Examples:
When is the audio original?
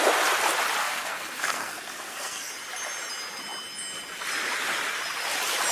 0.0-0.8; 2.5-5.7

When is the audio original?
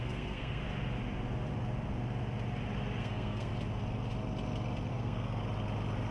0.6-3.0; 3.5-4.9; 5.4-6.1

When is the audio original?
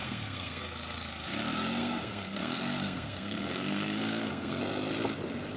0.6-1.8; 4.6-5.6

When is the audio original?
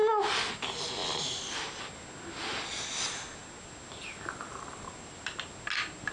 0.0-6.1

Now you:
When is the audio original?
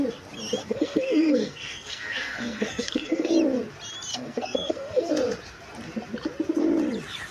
0.0-0.6; 3.3-4.1; 5.1-7.3